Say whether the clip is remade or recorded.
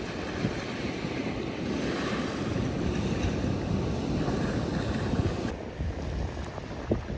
recorded